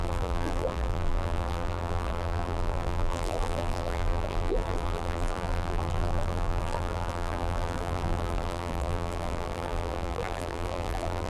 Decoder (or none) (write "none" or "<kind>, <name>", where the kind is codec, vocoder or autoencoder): vocoder, BigVGAN v2